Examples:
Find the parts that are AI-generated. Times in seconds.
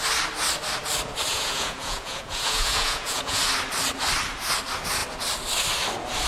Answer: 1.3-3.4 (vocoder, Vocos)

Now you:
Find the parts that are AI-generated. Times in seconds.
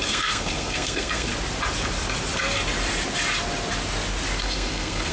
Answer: 0.0-1.3 (codec, SNAC); 4.4-5.1